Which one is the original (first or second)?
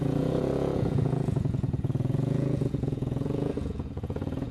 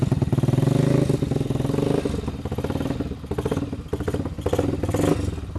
second